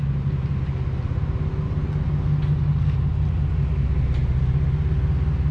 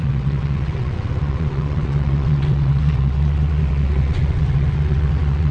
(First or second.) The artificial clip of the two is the second